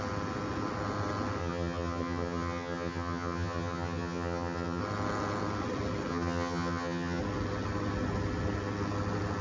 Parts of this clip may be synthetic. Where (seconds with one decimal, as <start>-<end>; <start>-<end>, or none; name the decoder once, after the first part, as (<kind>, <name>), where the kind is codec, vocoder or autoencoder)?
1.4-4.8 (vocoder, HiFi-GAN); 6.1-7.2